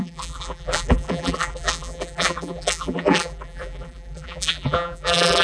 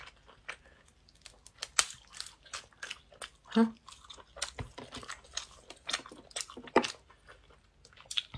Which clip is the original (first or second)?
second